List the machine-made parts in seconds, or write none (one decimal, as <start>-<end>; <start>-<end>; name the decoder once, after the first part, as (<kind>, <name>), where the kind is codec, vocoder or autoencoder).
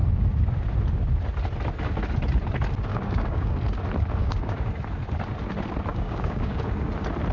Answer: 2.9-3.5 (codec, DAC); 4.2-4.7; 5.9-6.6